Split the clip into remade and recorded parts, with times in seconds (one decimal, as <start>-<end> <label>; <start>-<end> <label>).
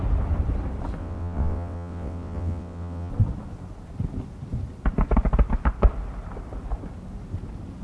0.0-1.0 recorded; 1.0-3.1 remade; 3.1-7.8 recorded